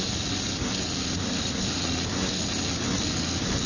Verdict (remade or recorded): recorded